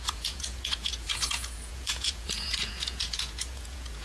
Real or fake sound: fake